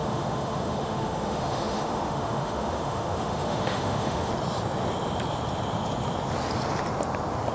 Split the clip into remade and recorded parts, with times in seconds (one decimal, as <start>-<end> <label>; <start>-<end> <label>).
0.0-4.3 remade; 4.3-7.5 recorded